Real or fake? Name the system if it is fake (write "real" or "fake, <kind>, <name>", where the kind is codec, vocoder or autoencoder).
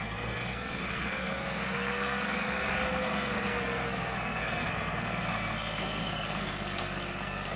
fake, codec, SNAC